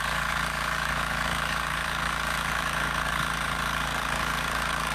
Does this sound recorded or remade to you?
remade